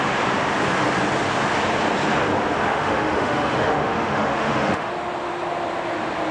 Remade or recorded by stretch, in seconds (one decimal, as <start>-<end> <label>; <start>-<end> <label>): 0.0-2.7 recorded; 2.7-4.9 remade; 4.9-6.3 recorded